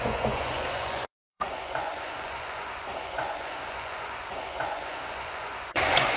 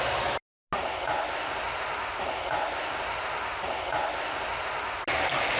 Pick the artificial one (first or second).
first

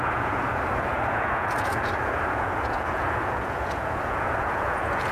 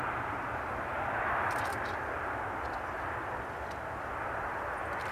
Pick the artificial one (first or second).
first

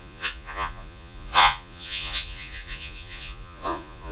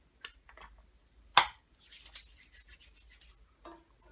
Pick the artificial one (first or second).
first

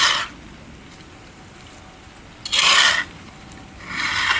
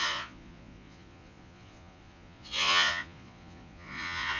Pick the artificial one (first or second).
second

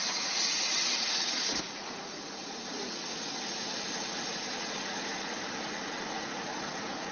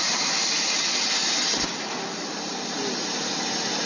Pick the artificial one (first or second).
first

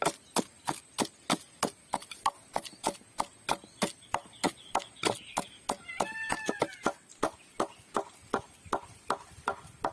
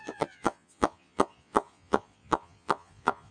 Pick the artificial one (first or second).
second